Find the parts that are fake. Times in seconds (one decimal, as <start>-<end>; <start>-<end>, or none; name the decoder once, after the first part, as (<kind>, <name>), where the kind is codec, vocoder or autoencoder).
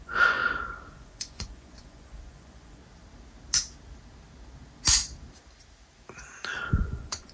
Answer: 0.0-0.4 (vocoder, Vocos); 0.9-2.8; 6.7-7.3